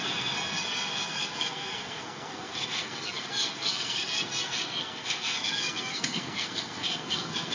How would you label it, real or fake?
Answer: fake